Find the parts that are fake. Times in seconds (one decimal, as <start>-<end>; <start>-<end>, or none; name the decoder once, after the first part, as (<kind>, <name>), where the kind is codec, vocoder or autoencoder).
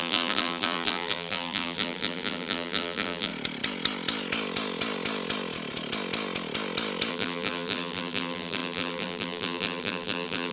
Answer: 0.0-3.3 (vocoder, BigVGAN v2); 7.1-10.5